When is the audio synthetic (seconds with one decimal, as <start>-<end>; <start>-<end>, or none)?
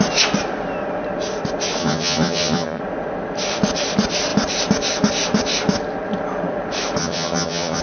1.8-2.8; 7.0-7.8